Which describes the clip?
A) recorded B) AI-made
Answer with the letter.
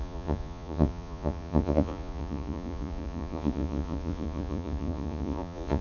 B